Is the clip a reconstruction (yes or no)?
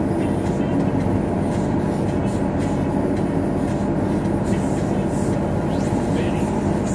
no